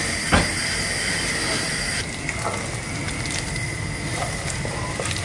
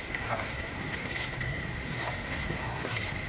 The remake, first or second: second